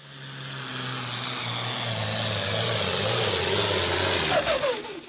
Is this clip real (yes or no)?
yes